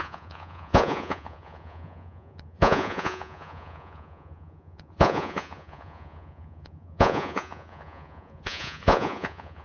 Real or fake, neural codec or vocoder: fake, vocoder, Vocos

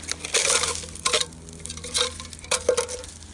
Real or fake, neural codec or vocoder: real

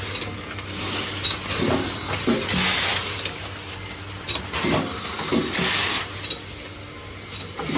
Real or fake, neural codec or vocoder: real